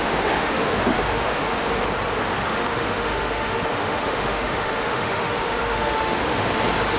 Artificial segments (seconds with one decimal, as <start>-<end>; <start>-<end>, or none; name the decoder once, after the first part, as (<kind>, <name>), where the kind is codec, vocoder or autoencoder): 0.0-1.7 (autoencoder, DAC-VAE); 2.4-6.6